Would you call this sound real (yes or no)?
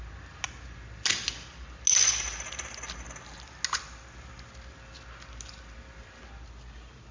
yes